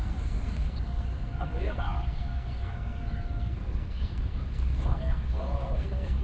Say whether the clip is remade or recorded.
remade